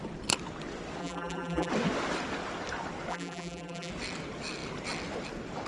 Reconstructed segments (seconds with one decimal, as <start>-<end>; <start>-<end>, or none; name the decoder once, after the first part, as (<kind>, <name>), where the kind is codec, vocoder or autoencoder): 1.0-1.7 (vocoder, BigVGAN v2); 3.1-3.9